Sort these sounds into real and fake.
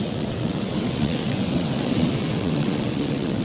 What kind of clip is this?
fake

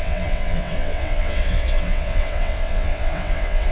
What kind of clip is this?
fake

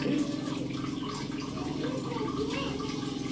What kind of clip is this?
real